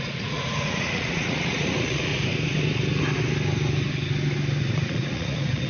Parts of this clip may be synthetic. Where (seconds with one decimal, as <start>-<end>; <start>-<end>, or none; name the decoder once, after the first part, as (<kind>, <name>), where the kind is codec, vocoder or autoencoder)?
0.0-2.1 (vocoder, Vocos); 4.6-5.7